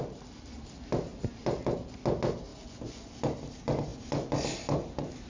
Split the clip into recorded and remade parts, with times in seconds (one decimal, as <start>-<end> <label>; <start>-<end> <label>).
0.0-2.5 recorded; 2.5-3.1 remade; 3.1-5.3 recorded